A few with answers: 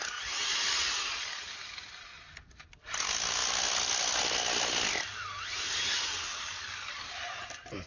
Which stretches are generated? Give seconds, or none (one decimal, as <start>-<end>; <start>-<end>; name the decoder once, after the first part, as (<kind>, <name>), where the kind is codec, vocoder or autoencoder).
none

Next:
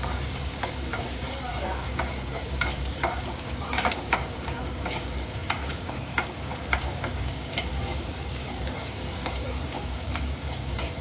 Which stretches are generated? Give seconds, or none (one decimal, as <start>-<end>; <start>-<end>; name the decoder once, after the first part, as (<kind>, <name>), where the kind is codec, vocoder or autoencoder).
0.0-11.0 (codec, DAC)

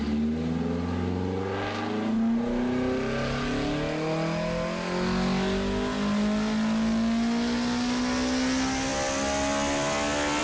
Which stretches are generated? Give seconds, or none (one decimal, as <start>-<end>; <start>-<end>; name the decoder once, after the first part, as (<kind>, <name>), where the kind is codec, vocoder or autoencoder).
none